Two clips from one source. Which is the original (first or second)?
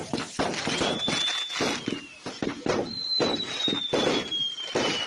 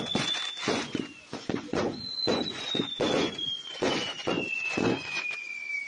first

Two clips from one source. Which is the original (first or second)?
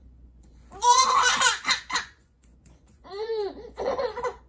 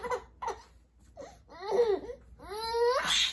second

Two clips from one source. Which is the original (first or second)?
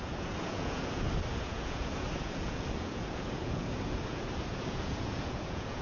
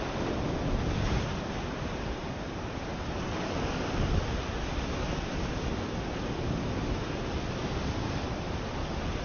second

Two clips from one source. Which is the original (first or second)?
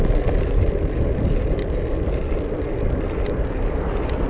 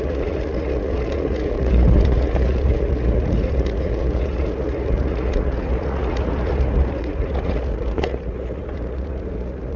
first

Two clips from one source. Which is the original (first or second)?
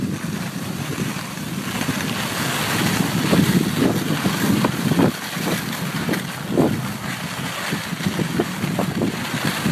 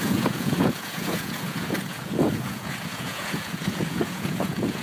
first